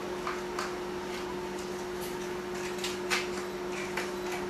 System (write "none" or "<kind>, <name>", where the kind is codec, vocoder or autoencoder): none